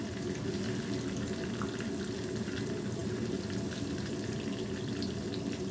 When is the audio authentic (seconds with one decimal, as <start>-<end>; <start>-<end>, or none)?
0.0-5.7